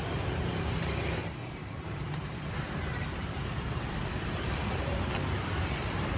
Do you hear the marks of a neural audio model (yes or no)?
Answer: yes